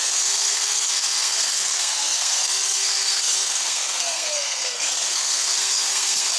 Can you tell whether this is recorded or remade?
remade